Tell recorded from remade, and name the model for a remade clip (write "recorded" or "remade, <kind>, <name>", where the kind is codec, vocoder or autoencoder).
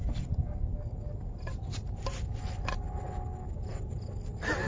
recorded